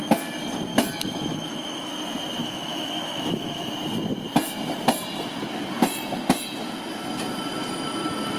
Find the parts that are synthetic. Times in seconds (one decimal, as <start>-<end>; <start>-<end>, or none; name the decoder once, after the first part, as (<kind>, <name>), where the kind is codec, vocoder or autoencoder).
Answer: 0.7-1.9 (autoencoder, DAC-VAE); 2.4-3.7

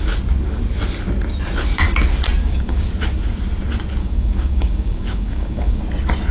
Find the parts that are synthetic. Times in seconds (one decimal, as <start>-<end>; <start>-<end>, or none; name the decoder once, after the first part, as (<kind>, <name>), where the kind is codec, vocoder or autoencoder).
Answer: 2.4-2.9 (codec, DAC); 4.0-5.8

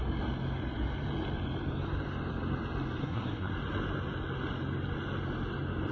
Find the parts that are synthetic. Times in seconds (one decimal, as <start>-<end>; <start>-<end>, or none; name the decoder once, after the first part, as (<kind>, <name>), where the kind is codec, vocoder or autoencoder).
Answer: 3.0-3.5 (codec, SNAC)

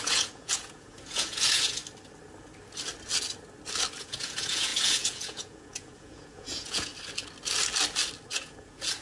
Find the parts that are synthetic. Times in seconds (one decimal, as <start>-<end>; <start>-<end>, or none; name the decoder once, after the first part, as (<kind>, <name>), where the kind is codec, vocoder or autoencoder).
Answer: 0.0-1.8 (vocoder, Vocos); 4.0-6.9; 8.3-9.0

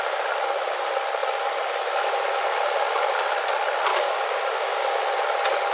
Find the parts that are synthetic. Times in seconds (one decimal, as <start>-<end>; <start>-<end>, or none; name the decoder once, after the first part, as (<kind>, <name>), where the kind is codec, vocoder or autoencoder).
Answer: 3.9-5.0 (codec, DAC)

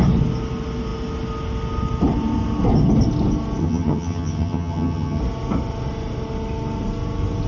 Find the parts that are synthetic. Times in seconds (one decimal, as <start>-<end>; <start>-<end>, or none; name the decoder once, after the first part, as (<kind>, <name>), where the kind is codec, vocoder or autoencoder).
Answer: 3.6-5.2 (vocoder, HiFi-GAN)